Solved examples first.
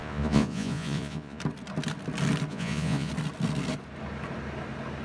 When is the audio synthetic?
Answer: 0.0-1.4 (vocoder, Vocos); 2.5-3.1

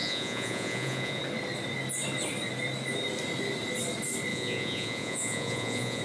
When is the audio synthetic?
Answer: 0.0-1.2 (vocoder, Vocos); 4.3-6.0

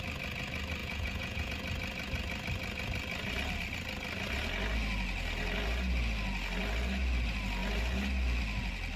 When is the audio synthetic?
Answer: 0.8-1.5 (vocoder, Vocos)

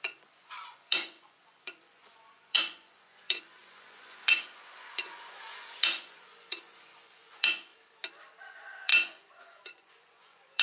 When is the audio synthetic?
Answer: 0.0-7.7 (vocoder, Vocos); 8.5-10.6

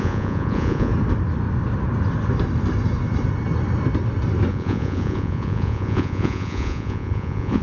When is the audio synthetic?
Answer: 0.0-0.9 (vocoder, Vocos); 4.5-7.6